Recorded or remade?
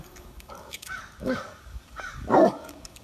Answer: remade